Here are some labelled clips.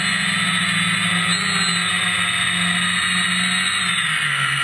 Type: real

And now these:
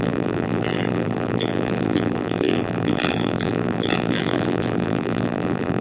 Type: fake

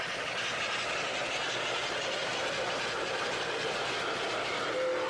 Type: real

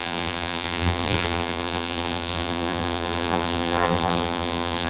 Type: fake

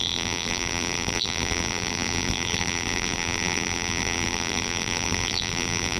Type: fake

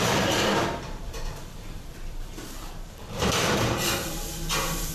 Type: fake